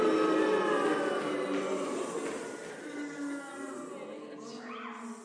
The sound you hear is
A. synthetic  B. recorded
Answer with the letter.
B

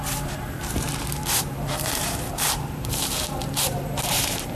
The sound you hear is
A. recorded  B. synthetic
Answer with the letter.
B